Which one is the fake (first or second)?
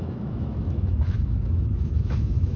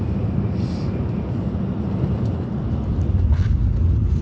first